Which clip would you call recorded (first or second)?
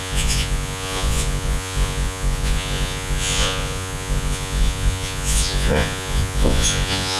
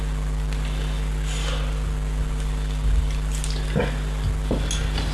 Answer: second